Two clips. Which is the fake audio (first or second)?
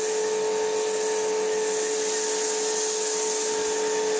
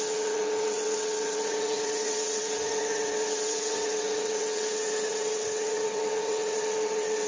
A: second